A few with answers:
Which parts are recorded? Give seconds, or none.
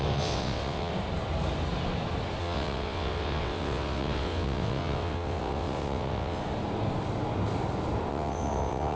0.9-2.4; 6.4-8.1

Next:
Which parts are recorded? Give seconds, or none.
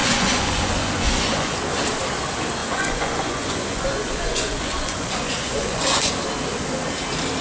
1.6-2.6; 6.1-7.4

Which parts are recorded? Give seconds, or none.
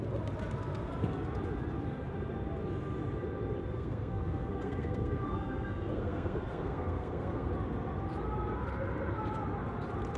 0.0-3.7; 7.5-10.2